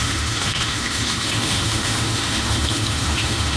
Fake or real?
fake